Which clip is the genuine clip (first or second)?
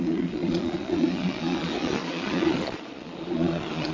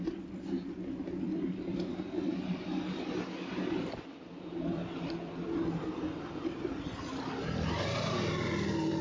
second